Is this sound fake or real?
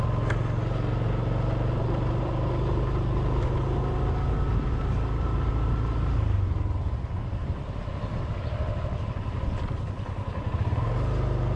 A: real